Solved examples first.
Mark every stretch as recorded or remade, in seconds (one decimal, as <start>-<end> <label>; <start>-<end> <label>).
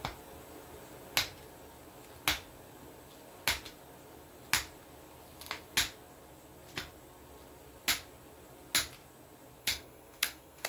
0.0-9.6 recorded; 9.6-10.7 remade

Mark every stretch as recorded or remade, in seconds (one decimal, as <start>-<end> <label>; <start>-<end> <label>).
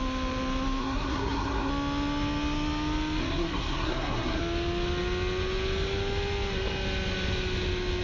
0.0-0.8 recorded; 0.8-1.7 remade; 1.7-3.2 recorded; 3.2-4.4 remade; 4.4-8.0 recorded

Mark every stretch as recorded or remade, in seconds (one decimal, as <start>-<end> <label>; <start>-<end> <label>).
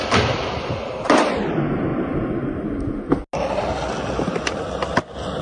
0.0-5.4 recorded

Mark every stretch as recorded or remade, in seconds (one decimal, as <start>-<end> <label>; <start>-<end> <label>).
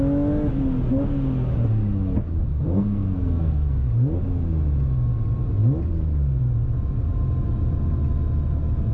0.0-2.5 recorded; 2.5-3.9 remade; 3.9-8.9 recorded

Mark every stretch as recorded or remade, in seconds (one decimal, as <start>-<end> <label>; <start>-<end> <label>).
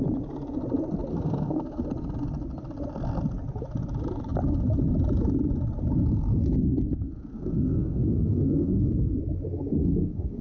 0.0-1.1 recorded; 1.1-1.8 remade; 1.8-6.3 recorded; 6.3-9.2 remade; 9.2-9.8 recorded; 9.8-10.4 remade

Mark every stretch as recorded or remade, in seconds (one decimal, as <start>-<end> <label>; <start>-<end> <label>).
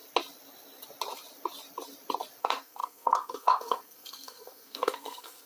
0.0-2.4 recorded; 2.4-5.5 remade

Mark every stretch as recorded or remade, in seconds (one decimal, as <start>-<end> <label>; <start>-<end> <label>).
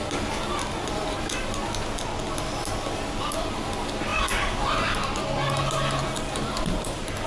0.0-7.3 recorded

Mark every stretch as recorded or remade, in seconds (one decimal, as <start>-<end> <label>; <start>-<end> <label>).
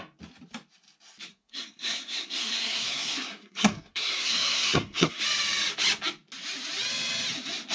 0.0-1.3 recorded; 1.3-5.2 remade; 5.2-7.7 recorded